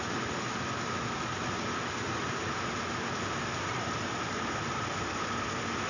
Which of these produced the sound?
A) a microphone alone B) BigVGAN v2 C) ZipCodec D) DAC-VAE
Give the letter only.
A